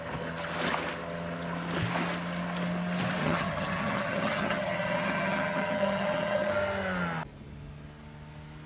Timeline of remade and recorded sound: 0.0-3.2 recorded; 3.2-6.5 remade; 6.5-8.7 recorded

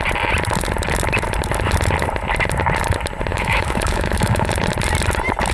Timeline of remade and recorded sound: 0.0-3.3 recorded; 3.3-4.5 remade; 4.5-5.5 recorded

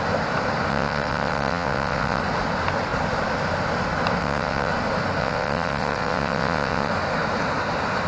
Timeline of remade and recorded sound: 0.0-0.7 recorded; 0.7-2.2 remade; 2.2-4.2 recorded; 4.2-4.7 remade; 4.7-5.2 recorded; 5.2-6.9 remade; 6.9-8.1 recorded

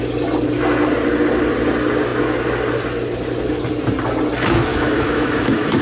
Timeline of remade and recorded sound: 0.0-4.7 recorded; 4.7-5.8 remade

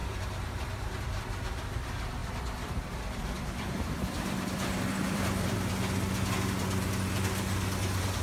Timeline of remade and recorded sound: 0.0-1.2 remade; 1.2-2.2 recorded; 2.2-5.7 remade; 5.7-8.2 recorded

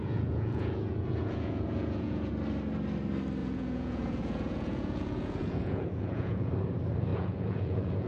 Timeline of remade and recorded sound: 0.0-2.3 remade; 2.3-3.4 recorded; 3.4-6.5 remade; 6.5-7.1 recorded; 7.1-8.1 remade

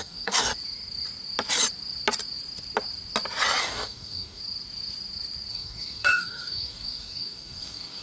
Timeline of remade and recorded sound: 0.0-0.5 remade; 0.5-3.6 recorded; 3.6-4.4 remade; 4.4-5.5 recorded; 5.5-8.0 remade